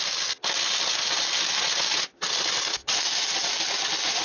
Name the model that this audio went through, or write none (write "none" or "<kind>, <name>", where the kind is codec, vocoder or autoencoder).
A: none